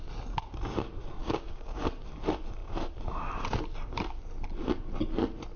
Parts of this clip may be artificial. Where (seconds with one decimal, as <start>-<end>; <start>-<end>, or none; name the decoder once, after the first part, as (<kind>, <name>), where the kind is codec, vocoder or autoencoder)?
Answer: 1.2-1.8 (codec, DAC)